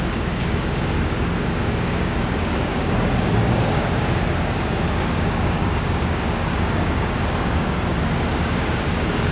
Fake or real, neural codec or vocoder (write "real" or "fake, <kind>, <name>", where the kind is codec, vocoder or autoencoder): fake, codec, DAC